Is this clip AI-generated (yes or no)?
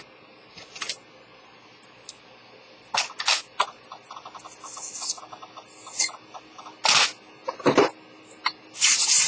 no